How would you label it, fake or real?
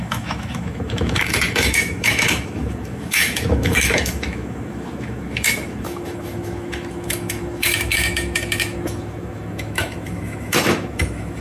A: fake